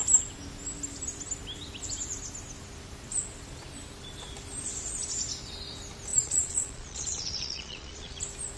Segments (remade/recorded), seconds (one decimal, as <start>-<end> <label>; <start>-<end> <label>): 0.0-6.1 recorded; 6.1-8.2 remade; 8.2-8.6 recorded